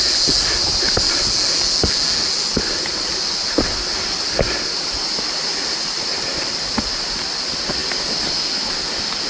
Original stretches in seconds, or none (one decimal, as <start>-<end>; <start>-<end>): 0.0-9.3